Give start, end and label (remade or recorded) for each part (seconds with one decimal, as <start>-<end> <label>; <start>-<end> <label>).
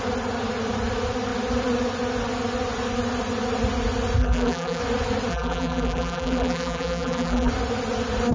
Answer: 0.0-4.2 recorded; 4.2-4.8 remade; 4.8-5.3 recorded; 5.3-7.5 remade; 7.5-8.3 recorded